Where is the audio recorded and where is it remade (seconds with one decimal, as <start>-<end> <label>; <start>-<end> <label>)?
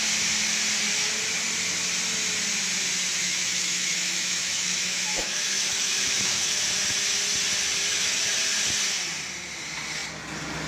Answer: 0.0-3.2 recorded; 3.2-6.6 remade; 6.6-7.9 recorded; 7.9-8.4 remade; 8.4-10.7 recorded